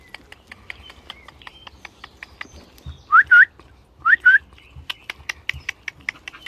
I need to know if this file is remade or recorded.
recorded